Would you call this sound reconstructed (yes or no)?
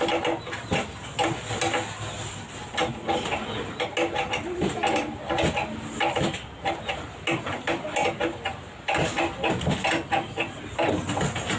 no